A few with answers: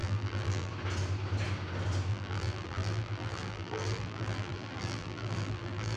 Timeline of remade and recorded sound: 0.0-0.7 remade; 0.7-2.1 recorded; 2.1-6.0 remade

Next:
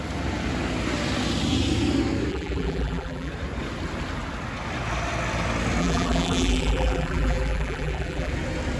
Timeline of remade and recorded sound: 0.0-2.3 recorded; 2.3-3.3 remade; 3.3-5.8 recorded; 5.8-8.3 remade; 8.3-8.8 recorded

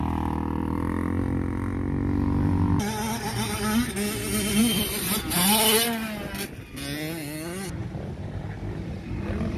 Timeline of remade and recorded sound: 0.0-4.6 recorded; 4.6-5.2 remade; 5.2-7.8 recorded; 7.8-8.4 remade; 8.4-9.6 recorded

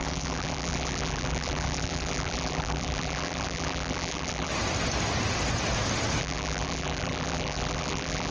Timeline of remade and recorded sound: 0.0-4.5 remade; 4.5-6.2 recorded; 6.2-8.3 remade

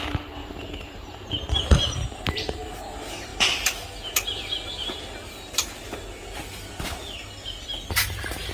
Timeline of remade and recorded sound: 0.0-0.4 recorded; 0.4-2.3 remade; 2.3-8.5 recorded

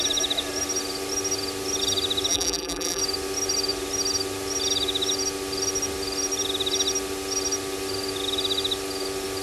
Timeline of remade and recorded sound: 0.0-2.3 recorded; 2.3-3.0 remade; 3.0-9.4 recorded

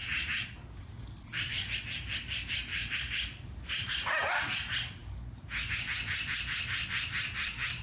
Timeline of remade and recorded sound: 0.0-0.8 remade; 0.8-2.7 recorded; 2.7-3.9 remade; 3.9-7.8 recorded